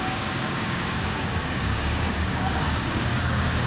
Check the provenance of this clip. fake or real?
fake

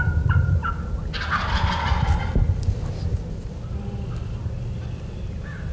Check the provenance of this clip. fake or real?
real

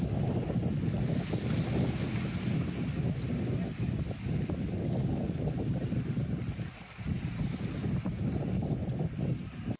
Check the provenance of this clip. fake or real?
real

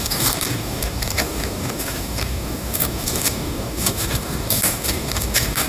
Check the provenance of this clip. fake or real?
fake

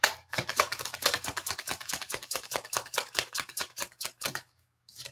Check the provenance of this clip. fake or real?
fake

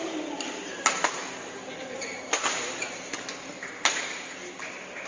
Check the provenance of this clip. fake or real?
real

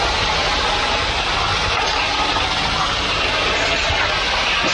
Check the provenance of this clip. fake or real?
real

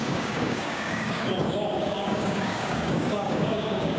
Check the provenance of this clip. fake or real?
fake